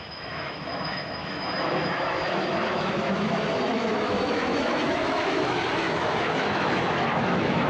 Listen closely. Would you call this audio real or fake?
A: fake